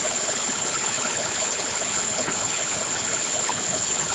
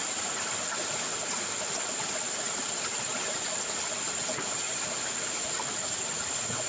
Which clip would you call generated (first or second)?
first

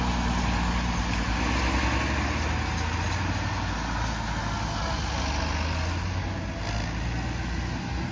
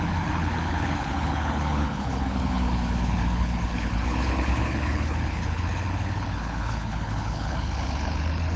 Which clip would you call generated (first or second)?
second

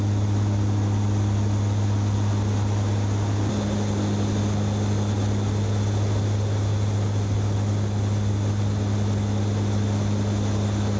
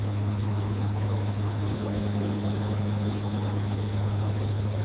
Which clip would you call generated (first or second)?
second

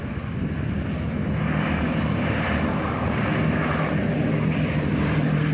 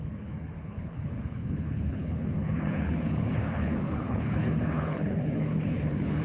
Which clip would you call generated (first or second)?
second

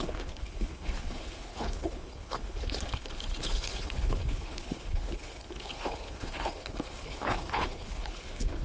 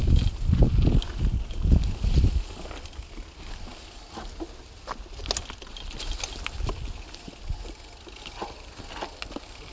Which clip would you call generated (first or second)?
first